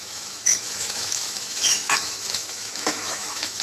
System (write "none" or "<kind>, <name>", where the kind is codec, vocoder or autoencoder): autoencoder, DAC-VAE